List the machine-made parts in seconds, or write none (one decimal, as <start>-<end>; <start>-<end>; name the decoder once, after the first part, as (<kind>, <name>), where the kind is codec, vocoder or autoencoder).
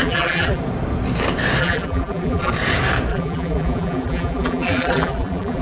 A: 0.0-0.6 (vocoder, BigVGAN v2); 1.6-2.5; 3.1-5.6